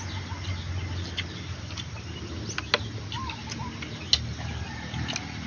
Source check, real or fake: real